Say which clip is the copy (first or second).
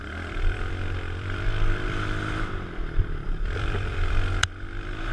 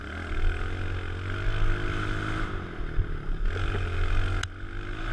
first